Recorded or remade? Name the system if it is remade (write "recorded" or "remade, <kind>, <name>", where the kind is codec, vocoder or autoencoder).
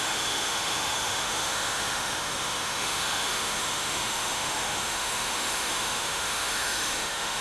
remade, autoencoder, DAC-VAE